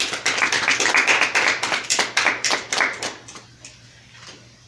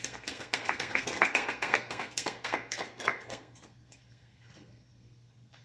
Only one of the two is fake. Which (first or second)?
second